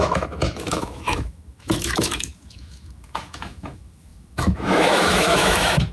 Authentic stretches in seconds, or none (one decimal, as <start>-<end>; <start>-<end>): none